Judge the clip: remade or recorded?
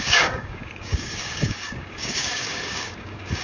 remade